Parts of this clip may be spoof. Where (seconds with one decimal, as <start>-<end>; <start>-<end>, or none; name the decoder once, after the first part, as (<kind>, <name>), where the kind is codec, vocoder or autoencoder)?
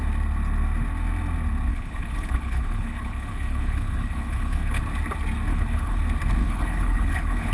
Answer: 1.7-4.8 (codec, HILCodec); 5.5-6.0; 6.4-7.5